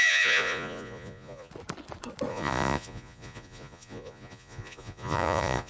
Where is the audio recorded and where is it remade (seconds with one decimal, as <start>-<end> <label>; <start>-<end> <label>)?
0.0-1.5 remade; 1.5-2.3 recorded; 2.3-5.7 remade